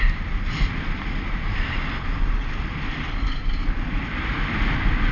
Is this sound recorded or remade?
recorded